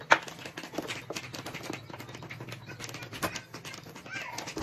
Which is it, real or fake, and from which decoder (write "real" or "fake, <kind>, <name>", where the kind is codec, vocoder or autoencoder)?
real